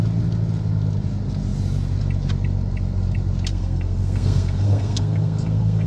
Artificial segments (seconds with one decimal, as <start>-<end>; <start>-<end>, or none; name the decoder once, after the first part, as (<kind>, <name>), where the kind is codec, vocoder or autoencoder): 3.5-5.9 (codec, SNAC)